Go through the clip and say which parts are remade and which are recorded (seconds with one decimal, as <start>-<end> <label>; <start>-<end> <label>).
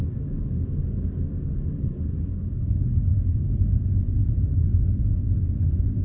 0.0-1.5 remade; 1.5-6.0 recorded